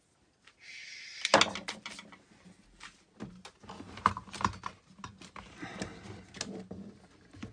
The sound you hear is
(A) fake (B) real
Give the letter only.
B